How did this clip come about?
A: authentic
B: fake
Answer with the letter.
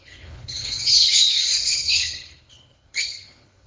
B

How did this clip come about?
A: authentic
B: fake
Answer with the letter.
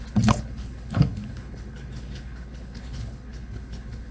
B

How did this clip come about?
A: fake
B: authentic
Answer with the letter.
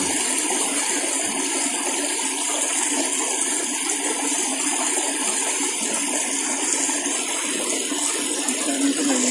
B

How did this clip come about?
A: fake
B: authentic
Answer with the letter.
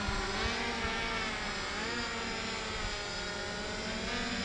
B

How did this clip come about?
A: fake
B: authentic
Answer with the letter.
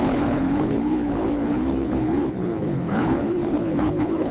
A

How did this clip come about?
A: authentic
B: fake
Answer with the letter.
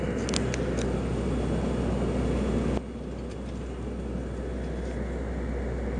A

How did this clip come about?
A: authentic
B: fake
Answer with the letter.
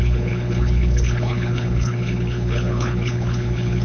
B